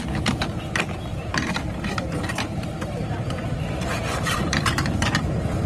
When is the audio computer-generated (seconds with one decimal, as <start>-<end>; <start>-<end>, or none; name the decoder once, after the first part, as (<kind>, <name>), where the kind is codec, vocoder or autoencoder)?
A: 1.1-4.5 (vocoder, BigVGAN v2)